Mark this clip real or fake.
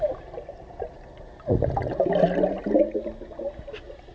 real